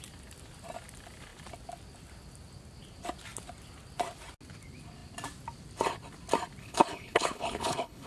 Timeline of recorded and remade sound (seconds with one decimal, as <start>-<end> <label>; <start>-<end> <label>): 0.0-6.6 recorded; 6.6-8.1 remade